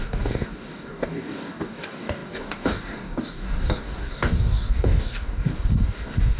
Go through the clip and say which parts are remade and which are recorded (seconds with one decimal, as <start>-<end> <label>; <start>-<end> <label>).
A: 0.0-6.4 remade